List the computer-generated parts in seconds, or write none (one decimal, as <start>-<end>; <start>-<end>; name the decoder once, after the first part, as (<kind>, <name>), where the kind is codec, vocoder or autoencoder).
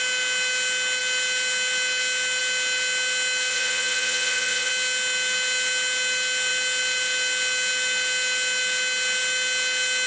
3.5-4.7 (vocoder, Vocos)